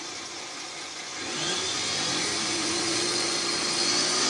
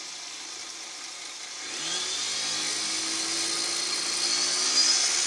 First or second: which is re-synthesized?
first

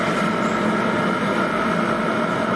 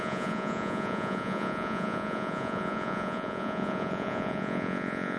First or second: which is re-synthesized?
second